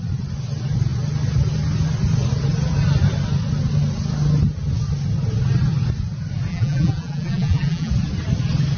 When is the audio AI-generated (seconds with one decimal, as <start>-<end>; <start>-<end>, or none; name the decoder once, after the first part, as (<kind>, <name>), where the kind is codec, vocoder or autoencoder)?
6.5-7.9 (vocoder, BigVGAN v2)